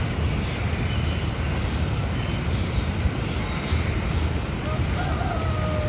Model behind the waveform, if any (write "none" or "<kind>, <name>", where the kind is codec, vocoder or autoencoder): none